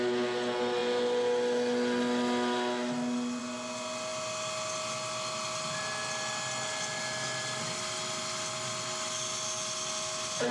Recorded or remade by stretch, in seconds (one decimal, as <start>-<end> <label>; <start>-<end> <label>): 0.0-10.5 recorded

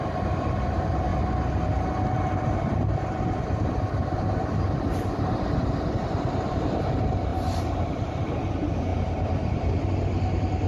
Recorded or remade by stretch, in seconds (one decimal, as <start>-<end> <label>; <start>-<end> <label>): 0.0-7.3 recorded; 7.3-8.3 remade; 8.3-10.7 recorded

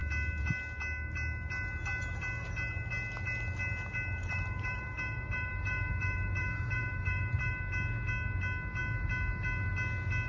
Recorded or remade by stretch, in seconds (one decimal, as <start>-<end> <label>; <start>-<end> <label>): 0.0-4.2 recorded; 4.2-7.6 remade; 7.6-10.3 recorded

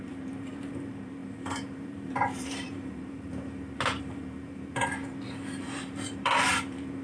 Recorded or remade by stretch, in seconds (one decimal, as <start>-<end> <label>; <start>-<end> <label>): 0.0-7.0 remade

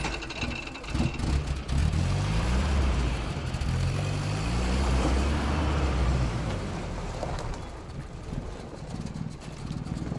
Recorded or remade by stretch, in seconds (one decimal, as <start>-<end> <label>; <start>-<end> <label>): 0.0-1.8 recorded; 1.8-6.8 remade; 6.8-10.2 recorded